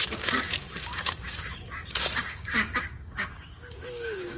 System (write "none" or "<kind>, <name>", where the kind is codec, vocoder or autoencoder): codec, DAC